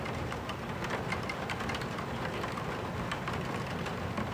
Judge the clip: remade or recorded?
recorded